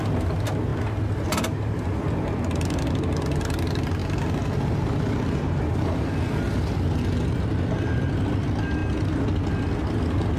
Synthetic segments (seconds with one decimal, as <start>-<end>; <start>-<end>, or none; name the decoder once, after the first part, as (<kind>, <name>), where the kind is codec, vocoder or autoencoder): none